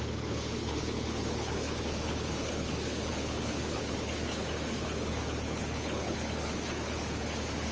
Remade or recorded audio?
remade